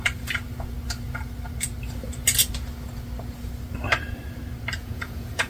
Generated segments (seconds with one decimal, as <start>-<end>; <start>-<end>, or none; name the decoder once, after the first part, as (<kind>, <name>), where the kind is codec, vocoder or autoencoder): 4.8-5.5 (vocoder, Vocos)